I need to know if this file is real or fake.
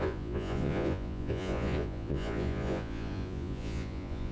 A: fake